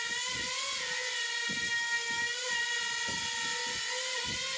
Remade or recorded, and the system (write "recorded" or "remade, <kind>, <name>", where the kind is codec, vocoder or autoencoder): recorded